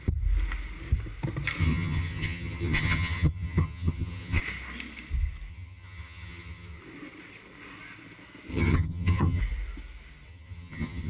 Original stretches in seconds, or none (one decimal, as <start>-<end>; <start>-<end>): 0.0-1.6; 4.4-5.5; 6.8-8.5; 9.4-10.3